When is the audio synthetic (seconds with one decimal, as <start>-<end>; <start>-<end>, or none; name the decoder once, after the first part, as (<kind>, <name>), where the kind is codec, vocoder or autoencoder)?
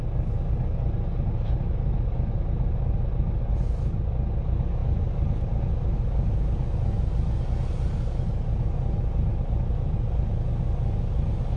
none